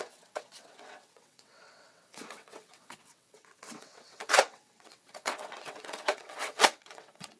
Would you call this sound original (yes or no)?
no